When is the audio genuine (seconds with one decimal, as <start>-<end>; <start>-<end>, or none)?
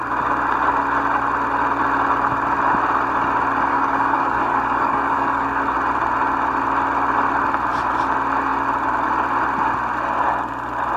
0.0-3.7; 5.6-11.0